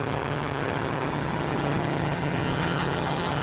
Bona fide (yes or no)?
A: no